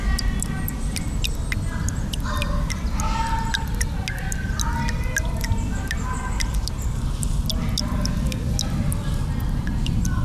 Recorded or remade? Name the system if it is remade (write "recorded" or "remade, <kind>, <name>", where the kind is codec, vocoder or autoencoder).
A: recorded